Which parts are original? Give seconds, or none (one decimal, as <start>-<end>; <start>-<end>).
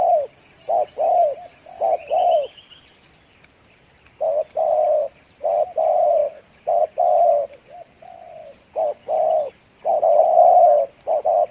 0.0-11.5